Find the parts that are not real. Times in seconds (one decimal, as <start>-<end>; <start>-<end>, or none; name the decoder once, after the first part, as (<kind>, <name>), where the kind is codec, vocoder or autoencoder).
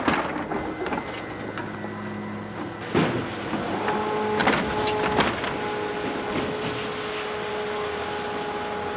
none